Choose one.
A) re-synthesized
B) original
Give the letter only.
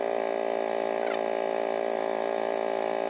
B